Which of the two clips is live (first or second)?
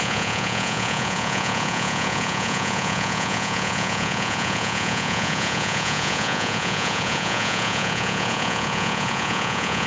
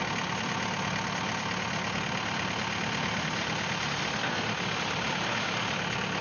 second